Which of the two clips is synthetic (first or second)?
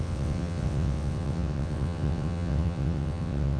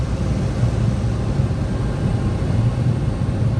first